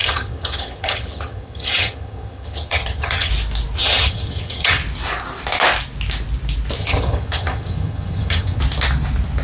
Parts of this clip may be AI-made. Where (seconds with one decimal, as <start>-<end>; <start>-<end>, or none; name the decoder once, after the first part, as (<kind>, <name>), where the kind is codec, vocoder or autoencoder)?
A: 0.0-3.3 (vocoder, HiFi-GAN); 3.8-4.8; 6.8-8.6